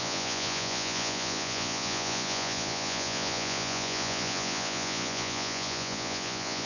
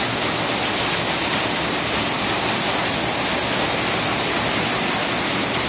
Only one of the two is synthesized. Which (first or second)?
first